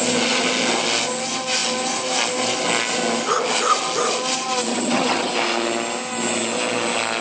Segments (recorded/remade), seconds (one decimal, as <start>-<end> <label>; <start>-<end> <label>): 0.0-4.7 recorded; 4.7-5.3 remade; 5.3-7.2 recorded